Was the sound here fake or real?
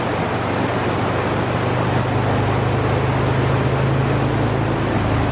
real